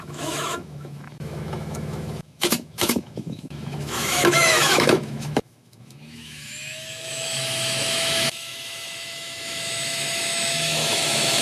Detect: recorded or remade remade